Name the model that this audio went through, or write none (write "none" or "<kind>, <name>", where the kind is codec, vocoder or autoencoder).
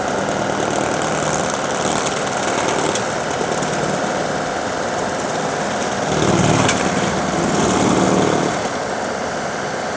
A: none